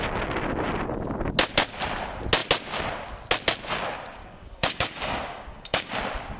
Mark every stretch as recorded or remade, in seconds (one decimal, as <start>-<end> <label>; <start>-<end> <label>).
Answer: 0.0-4.2 recorded; 4.2-5.9 remade; 5.9-6.4 recorded